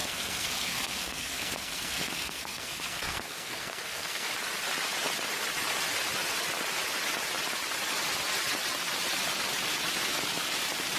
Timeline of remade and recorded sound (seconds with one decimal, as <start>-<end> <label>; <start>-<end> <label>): 0.0-4.3 remade; 4.3-11.0 recorded